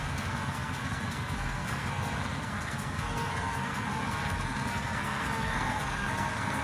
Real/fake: fake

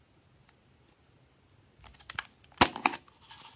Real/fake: real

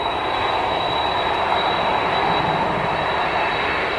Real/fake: real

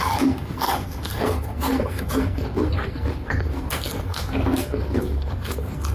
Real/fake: fake